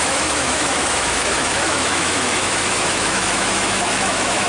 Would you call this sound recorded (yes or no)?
no